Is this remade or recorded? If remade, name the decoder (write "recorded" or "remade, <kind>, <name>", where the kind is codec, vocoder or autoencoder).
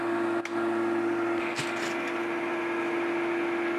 recorded